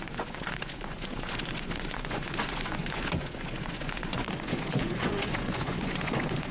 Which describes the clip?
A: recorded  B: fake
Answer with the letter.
B